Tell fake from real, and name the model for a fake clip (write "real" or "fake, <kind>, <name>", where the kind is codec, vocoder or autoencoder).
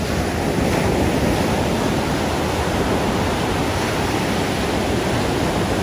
real